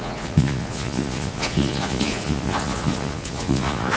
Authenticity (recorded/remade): remade